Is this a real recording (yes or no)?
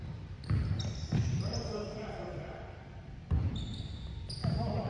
no